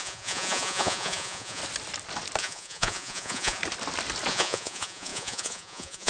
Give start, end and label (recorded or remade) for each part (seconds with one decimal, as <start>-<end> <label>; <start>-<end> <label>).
0.0-1.6 remade; 1.6-2.4 recorded; 2.4-3.6 remade; 3.6-4.3 recorded; 4.3-6.1 remade